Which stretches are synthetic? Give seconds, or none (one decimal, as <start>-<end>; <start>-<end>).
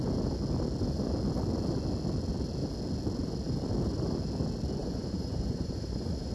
4.8-6.3